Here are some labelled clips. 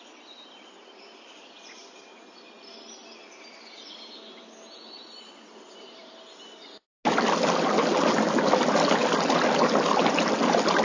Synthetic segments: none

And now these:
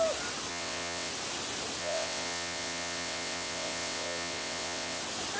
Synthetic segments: 0.5-1.1 (vocoder, WaveNeXt); 1.8-5.0

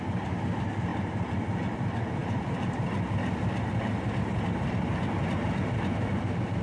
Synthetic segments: none

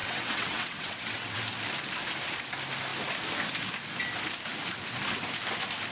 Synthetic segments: 0.0-1.4 (vocoder, WaveNeXt)